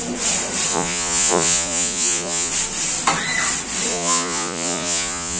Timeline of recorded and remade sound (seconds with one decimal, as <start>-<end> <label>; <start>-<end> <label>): 0.0-0.7 recorded; 0.7-2.5 remade; 2.5-3.9 recorded; 3.9-5.4 remade

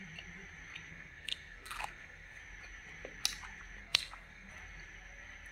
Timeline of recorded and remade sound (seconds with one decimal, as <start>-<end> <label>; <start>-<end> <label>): 0.0-0.9 recorded; 0.9-2.4 remade; 2.4-3.8 recorded; 3.8-4.5 remade; 4.5-5.5 recorded

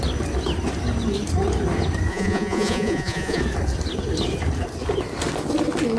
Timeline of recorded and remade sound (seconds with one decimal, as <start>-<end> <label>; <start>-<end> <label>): 0.0-2.1 recorded; 2.1-3.4 remade; 3.4-6.0 recorded

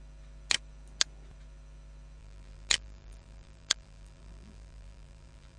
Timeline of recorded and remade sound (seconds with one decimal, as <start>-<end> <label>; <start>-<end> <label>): 0.0-2.2 recorded; 2.2-5.6 remade

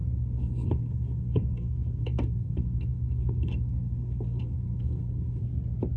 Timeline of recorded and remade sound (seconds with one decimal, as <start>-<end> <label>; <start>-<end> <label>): 0.0-5.4 remade; 5.4-6.0 recorded

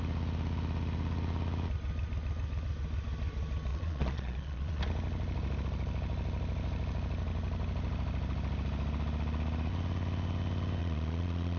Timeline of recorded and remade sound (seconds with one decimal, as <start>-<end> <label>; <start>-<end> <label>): 0.0-3.7 recorded; 3.7-4.8 remade; 4.8-10.8 recorded; 10.8-11.6 remade

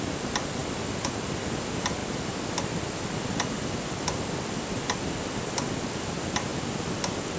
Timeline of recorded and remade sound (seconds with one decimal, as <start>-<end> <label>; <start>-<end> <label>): 0.0-7.4 recorded